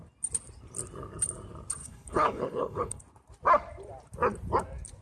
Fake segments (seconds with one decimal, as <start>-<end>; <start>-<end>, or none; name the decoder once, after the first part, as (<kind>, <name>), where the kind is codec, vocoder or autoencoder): 1.8-3.0 (codec, HILCodec)